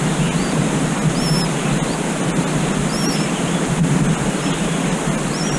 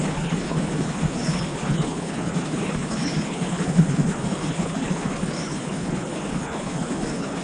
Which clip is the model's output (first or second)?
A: second